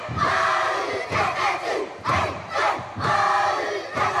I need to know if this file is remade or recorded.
remade